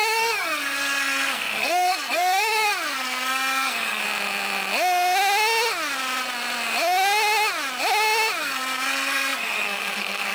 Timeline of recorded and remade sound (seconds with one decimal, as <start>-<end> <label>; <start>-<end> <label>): 0.0-4.0 remade; 4.0-8.4 recorded; 8.4-10.3 remade